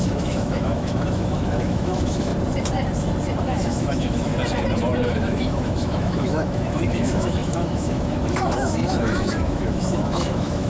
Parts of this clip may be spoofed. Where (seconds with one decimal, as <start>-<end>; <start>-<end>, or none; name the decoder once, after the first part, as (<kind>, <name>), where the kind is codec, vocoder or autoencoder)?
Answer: 0.0-2.3 (autoencoder, DAC-VAE); 3.4-4.3; 5.1-10.7